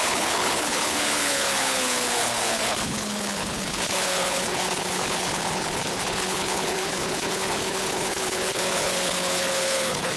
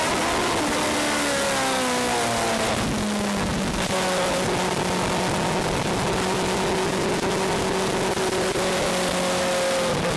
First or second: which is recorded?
second